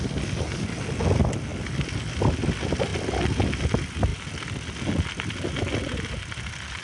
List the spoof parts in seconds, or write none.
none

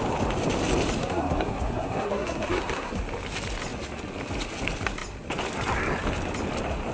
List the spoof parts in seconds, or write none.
1.0-3.0

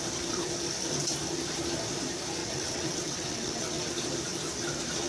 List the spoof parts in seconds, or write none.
2.4-3.9

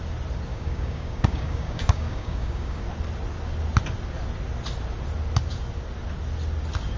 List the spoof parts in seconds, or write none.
0.5-2.8